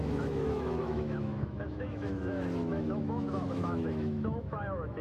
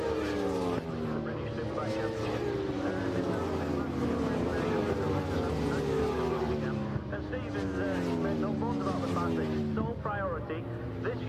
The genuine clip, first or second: second